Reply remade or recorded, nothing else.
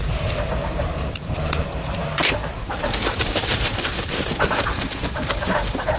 remade